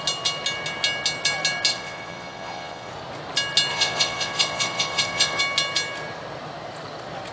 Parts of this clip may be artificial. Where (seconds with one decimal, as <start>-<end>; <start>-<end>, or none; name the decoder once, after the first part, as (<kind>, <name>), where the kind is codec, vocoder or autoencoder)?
1.7-2.9 (vocoder, Vocos); 3.7-5.4